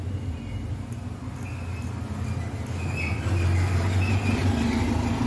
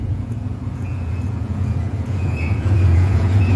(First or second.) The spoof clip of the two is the second